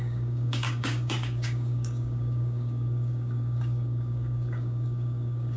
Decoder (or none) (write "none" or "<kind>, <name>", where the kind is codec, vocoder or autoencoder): codec, DAC